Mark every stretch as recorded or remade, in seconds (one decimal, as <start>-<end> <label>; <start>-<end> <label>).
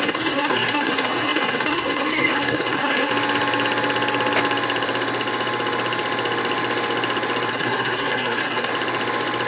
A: 0.0-3.1 remade; 3.1-7.5 recorded; 7.5-8.7 remade; 8.7-9.5 recorded